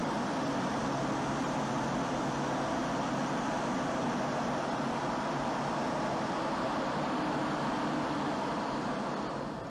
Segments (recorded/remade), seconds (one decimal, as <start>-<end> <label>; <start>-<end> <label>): 0.0-9.7 recorded